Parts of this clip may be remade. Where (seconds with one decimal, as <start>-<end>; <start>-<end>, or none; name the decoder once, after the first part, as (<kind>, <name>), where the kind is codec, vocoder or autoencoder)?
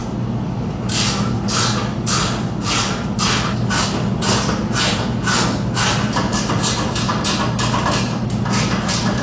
none